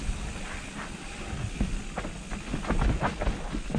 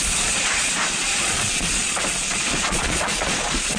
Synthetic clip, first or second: second